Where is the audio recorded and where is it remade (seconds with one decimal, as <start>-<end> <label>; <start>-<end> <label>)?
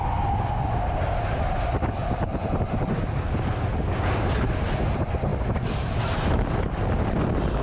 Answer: 0.0-7.6 recorded